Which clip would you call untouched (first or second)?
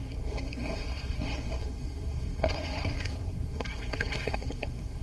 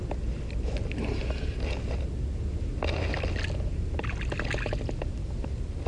second